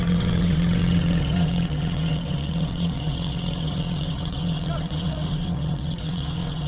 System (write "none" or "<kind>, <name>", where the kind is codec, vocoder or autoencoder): vocoder, WaveNeXt